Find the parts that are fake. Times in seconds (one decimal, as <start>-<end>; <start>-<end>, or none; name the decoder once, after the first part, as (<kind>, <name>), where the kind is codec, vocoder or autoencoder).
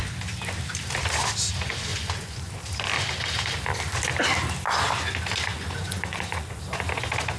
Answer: 1.9-2.5 (vocoder, Vocos); 5.5-6.6